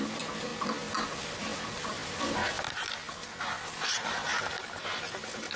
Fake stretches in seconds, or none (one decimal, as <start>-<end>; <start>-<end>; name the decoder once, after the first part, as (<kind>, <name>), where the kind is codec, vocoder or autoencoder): none